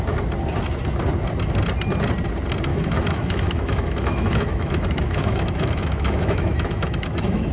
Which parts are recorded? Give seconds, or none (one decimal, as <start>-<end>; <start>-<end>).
0.0-2.7

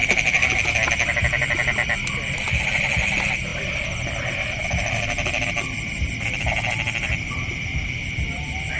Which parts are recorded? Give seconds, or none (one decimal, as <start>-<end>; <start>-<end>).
0.0-8.8

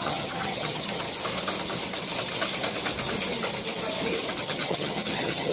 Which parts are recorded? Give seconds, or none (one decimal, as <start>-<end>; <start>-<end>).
1.1-4.4